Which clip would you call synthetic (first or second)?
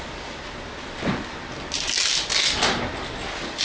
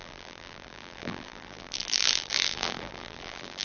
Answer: second